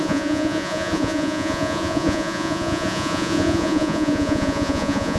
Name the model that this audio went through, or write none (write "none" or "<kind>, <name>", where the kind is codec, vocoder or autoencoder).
vocoder, Vocos